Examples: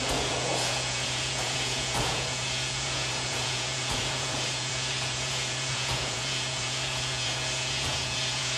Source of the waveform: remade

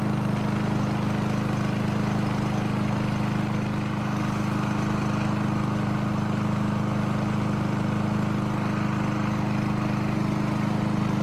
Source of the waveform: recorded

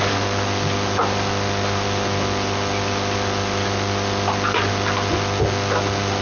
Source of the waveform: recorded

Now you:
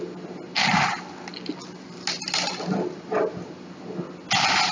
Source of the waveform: recorded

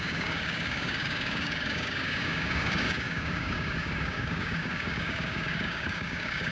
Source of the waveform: remade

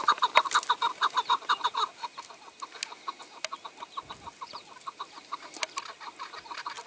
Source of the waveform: recorded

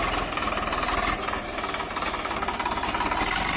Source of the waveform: recorded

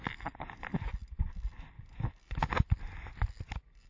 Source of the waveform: recorded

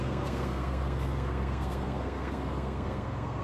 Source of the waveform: remade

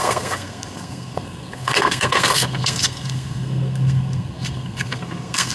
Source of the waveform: remade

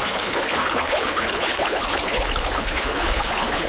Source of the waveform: remade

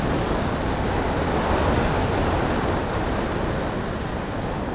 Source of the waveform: recorded